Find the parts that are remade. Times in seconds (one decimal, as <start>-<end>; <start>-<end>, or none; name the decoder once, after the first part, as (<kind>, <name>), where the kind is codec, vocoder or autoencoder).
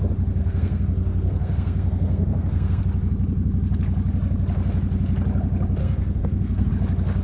0.4-2.8 (codec, SNAC); 5.8-6.7